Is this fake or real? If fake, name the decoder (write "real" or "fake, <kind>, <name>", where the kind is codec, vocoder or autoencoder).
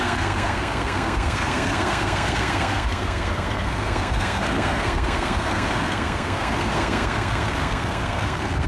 fake, codec, SNAC